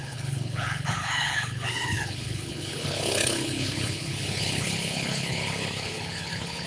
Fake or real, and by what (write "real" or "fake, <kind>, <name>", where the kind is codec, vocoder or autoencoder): fake, codec, HILCodec